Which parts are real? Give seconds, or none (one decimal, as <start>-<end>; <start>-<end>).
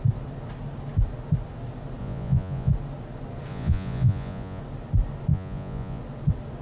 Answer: 0.0-2.0; 2.7-3.5; 4.6-5.3; 6.0-6.6